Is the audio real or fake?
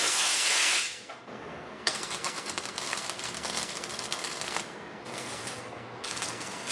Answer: fake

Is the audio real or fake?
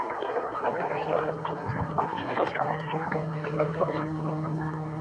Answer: fake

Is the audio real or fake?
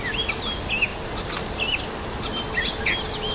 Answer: real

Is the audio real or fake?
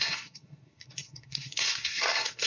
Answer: fake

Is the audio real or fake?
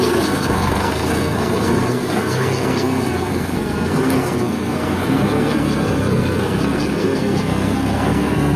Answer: fake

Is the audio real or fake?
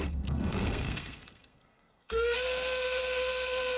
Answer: fake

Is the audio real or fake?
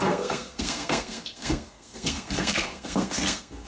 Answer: fake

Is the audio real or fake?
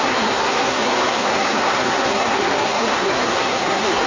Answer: fake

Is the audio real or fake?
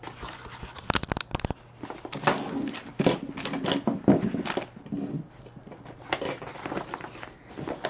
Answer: real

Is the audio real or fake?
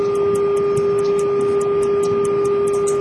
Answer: real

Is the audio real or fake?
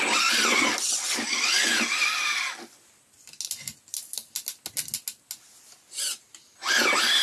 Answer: real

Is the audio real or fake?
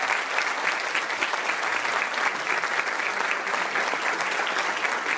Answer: real